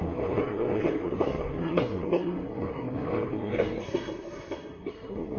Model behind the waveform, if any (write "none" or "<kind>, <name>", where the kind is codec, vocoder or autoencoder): codec, SNAC